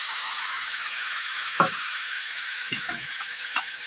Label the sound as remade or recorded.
remade